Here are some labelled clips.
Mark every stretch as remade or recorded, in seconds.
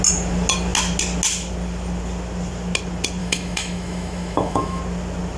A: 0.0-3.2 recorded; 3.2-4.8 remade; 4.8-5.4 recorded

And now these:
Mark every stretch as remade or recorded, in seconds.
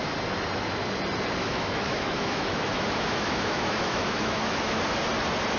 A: 0.0-1.4 recorded; 1.4-4.8 remade; 4.8-5.6 recorded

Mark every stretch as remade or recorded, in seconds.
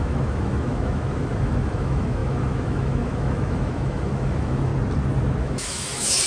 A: 0.0-4.7 remade; 4.7-5.4 recorded; 5.4-6.3 remade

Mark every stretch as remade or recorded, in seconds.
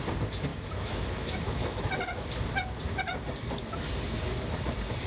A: 0.0-0.5 recorded; 0.5-1.9 remade; 1.9-5.1 recorded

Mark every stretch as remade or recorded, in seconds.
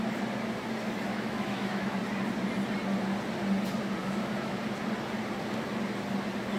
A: 0.0-1.1 recorded; 1.1-2.0 remade; 2.0-4.0 recorded; 4.0-4.6 remade; 4.6-6.6 recorded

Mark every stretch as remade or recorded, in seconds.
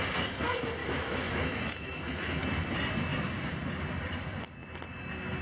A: 0.0-0.8 recorded; 0.8-2.4 remade; 2.4-5.4 recorded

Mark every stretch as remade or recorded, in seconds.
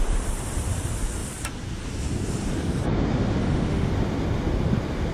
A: 0.0-3.4 recorded; 3.4-3.9 remade; 3.9-5.1 recorded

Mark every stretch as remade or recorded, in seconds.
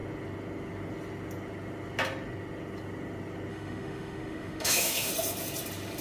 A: 0.0-3.5 recorded; 3.5-5.1 remade; 5.1-6.0 recorded